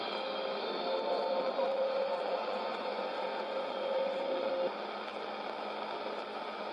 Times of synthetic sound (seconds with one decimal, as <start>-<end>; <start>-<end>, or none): 1.4-4.5